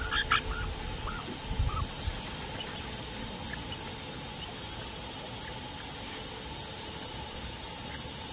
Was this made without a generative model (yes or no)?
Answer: yes